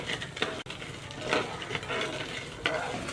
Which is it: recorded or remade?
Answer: recorded